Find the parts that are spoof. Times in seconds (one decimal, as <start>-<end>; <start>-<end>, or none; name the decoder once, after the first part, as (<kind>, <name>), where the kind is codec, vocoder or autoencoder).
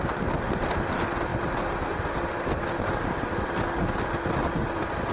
none